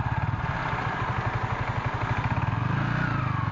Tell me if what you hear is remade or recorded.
recorded